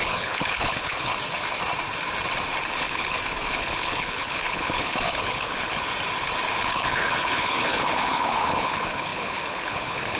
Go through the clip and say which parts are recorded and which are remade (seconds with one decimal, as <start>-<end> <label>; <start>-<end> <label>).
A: 0.0-1.1 remade; 1.1-2.8 recorded; 2.8-5.9 remade; 5.9-6.6 recorded; 6.6-10.2 remade